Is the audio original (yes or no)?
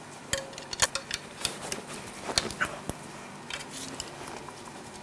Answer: yes